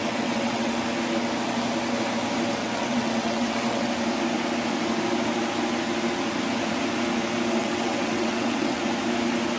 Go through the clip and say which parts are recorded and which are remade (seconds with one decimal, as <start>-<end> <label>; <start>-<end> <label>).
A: 0.0-0.8 remade; 0.8-2.6 recorded; 2.6-3.9 remade; 3.9-7.6 recorded; 7.6-8.8 remade; 8.8-9.6 recorded